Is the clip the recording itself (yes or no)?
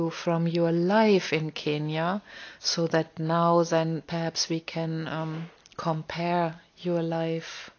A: yes